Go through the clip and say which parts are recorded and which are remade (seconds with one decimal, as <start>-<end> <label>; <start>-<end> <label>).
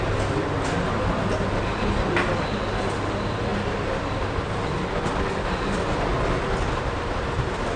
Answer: 0.0-7.8 recorded